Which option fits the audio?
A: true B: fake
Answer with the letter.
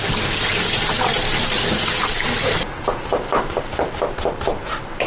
A